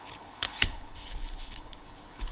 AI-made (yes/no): yes